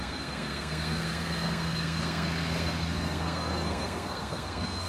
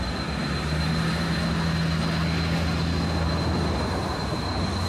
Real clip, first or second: second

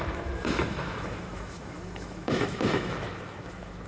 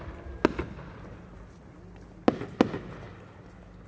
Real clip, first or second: second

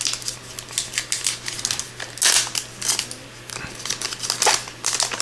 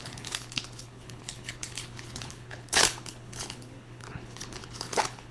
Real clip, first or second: first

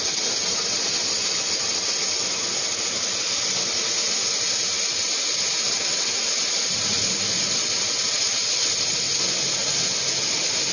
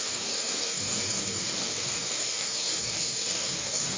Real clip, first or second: first